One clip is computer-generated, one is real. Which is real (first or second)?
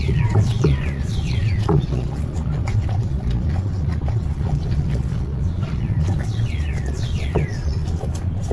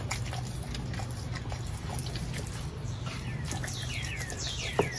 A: second